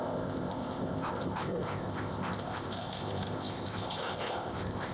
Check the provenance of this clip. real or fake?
fake